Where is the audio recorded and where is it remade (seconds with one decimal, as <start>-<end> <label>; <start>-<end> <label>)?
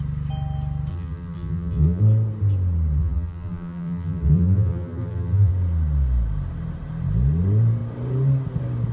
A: 0.0-0.9 recorded; 0.9-2.0 remade; 2.0-3.0 recorded; 3.0-5.5 remade; 5.5-8.9 recorded